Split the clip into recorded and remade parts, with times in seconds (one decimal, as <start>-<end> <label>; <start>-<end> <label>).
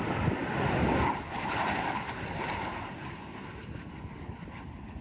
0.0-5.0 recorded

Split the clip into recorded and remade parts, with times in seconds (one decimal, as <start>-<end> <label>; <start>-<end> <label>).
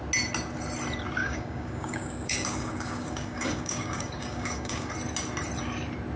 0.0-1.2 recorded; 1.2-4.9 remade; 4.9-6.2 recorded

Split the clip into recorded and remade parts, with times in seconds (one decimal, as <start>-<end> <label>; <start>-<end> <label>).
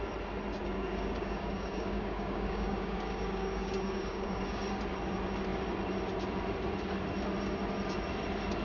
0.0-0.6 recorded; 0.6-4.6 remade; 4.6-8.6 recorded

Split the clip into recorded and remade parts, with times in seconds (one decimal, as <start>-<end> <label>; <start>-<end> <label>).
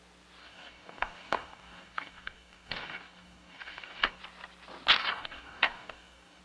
0.0-0.4 recorded; 0.4-4.2 remade; 4.2-5.0 recorded; 5.0-6.4 remade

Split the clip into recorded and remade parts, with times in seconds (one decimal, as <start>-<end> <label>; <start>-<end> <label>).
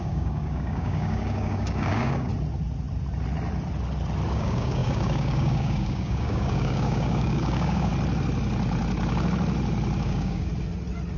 0.0-2.3 remade; 2.3-4.3 recorded; 4.3-7.9 remade; 7.9-10.0 recorded; 10.0-10.5 remade; 10.5-11.2 recorded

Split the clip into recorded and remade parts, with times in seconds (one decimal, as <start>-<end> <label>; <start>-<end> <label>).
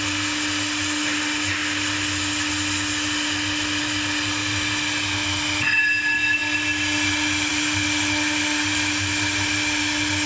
0.0-10.3 recorded